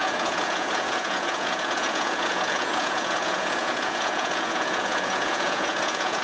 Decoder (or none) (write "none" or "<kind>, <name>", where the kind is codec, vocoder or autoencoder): vocoder, Vocos